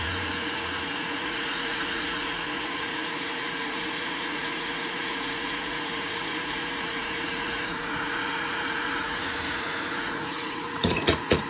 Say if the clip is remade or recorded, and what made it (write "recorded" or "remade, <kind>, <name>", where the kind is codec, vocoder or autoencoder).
remade, vocoder, Vocos